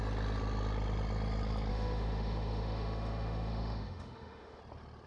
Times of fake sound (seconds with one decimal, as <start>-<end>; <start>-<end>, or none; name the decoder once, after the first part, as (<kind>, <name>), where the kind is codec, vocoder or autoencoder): 1.7-4.6 (autoencoder, DAC-VAE)